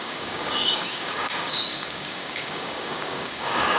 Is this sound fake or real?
fake